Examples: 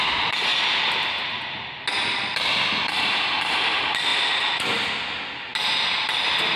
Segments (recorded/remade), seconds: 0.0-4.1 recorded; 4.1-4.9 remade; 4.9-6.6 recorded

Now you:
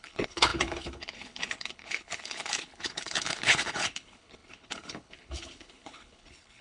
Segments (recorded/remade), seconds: 0.0-6.6 remade